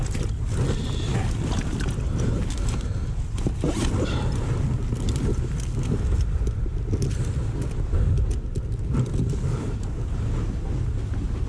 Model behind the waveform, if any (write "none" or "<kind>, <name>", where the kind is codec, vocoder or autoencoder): none